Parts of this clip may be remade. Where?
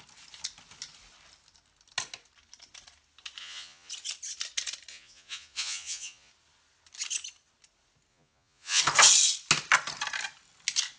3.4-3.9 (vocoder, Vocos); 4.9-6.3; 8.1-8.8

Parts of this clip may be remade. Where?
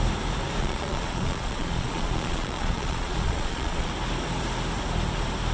0.6-3.9 (vocoder, Vocos)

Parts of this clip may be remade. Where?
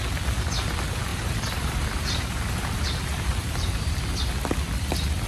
1.1-4.3 (vocoder, BigVGAN v2)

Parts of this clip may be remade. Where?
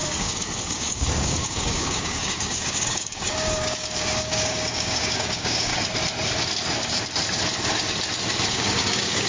0.0-5.7 (codec, DAC); 8.5-9.3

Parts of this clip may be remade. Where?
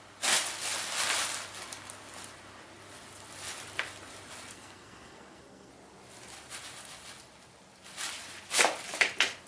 4.5-5.7 (codec, SNAC)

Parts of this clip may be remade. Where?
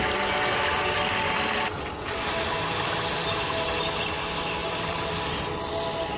4.6-5.4 (vocoder, BigVGAN v2)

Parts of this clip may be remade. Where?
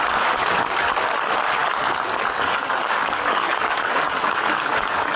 0.0-5.2 (codec, DAC)